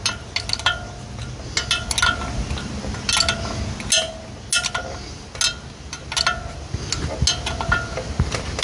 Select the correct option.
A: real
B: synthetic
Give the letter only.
A